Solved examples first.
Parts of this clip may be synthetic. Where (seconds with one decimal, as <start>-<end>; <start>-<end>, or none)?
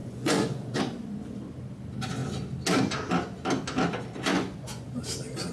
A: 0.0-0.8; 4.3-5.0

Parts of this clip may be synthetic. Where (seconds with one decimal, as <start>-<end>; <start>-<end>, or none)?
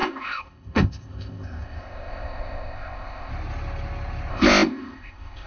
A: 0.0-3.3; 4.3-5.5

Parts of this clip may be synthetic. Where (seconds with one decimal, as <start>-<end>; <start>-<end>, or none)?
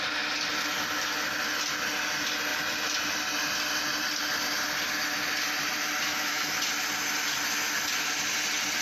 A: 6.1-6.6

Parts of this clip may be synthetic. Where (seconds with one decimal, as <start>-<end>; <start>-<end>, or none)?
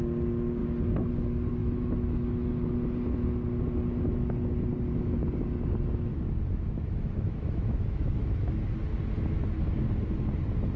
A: 1.6-2.7; 6.1-8.6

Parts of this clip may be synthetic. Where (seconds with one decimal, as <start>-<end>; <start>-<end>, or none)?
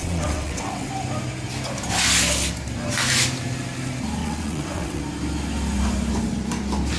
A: 0.0-0.9; 4.2-5.0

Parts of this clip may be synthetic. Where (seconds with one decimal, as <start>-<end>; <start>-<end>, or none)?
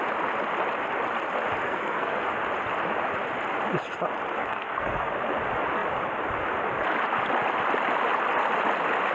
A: 1.6-2.2; 4.4-5.1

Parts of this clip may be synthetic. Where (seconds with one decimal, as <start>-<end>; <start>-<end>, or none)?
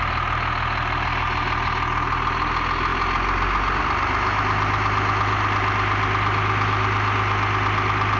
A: none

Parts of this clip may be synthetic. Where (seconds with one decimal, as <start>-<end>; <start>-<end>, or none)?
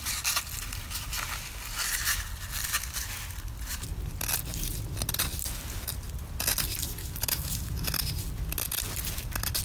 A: 7.0-7.7